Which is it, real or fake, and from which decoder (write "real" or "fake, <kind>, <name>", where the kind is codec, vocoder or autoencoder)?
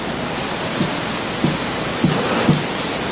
real